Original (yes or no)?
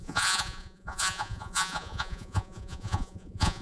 no